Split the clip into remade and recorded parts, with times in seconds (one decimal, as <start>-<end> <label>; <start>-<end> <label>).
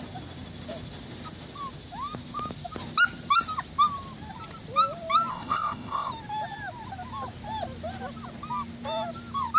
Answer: 0.0-5.3 recorded; 5.3-6.1 remade; 6.1-9.6 recorded